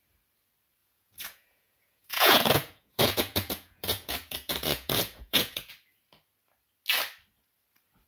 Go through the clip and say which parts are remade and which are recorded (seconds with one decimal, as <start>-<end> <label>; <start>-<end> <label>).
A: 0.0-0.8 recorded; 0.8-5.7 remade; 5.7-8.1 recorded